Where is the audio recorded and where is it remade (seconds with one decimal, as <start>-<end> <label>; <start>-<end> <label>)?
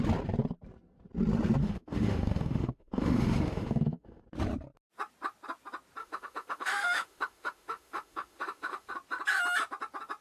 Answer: 0.0-1.6 recorded; 1.6-4.2 remade; 4.2-6.0 recorded; 6.0-8.9 remade; 8.9-10.2 recorded